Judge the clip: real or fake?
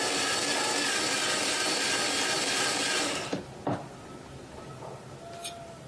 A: real